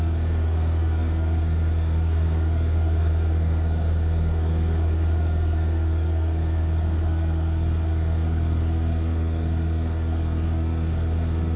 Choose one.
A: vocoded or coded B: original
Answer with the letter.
A